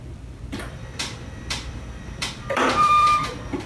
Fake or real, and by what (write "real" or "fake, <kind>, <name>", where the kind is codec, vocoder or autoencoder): fake, vocoder, BigVGAN v2